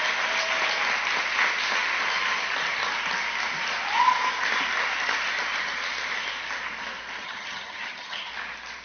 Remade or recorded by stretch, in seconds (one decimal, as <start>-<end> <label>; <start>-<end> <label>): 0.0-7.2 recorded; 7.2-8.3 remade; 8.3-8.8 recorded